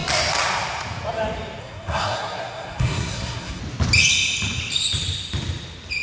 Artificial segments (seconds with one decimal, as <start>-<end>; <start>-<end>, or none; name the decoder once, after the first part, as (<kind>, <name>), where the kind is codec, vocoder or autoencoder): 1.6-3.6 (codec, SNAC)